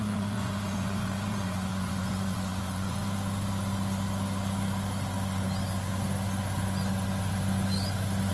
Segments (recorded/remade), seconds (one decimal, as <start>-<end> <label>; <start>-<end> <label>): 0.0-3.0 remade; 3.0-8.3 recorded